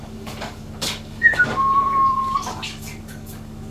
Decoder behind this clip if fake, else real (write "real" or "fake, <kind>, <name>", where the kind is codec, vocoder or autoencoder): fake, codec, DAC